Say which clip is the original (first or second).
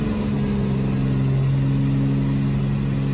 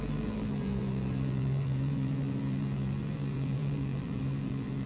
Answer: first